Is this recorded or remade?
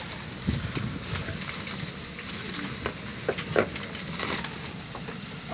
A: recorded